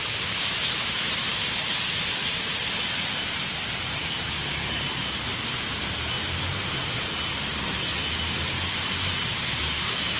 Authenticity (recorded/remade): recorded